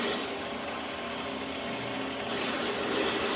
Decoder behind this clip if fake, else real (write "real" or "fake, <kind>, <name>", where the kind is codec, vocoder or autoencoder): real